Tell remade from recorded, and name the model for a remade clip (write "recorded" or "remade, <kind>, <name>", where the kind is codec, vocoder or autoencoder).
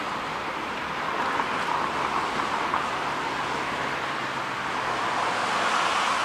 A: recorded